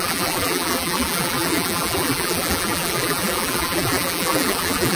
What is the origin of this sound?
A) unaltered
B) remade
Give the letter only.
B